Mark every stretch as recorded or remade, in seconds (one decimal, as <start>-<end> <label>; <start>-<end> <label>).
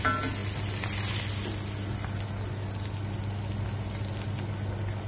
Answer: 0.0-5.1 recorded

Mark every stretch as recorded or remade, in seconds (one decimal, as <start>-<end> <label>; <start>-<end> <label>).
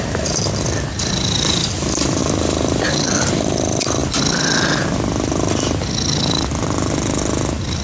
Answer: 0.0-7.8 recorded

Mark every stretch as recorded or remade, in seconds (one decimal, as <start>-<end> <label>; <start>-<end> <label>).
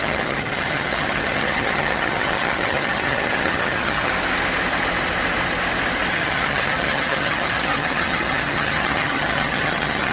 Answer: 0.0-4.1 remade; 4.1-6.1 recorded; 6.1-10.1 remade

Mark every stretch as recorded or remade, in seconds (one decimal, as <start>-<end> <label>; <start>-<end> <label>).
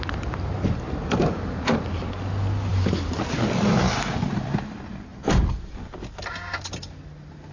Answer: 0.0-7.5 recorded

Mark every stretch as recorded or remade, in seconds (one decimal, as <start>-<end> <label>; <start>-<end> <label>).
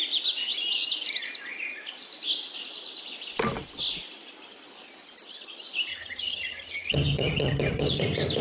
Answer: 0.0-5.9 recorded; 5.9-8.0 remade; 8.0-8.4 recorded